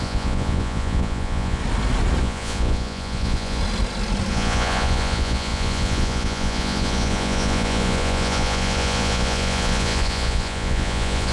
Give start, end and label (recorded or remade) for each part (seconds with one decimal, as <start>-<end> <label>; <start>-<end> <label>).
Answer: 0.0-1.6 remade; 1.6-2.2 recorded; 2.2-3.6 remade; 3.6-4.3 recorded; 4.3-11.3 remade